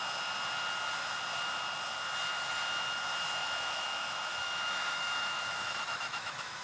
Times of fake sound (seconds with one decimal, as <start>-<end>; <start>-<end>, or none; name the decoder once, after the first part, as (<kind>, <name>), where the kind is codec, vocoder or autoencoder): 3.4-6.6 (autoencoder, DAC-VAE)